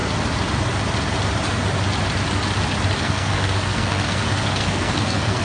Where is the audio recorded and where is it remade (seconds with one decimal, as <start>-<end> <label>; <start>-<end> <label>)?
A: 0.0-3.0 recorded; 3.0-5.4 remade